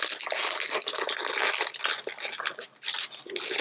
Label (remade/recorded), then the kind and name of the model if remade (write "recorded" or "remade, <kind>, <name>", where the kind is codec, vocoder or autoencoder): recorded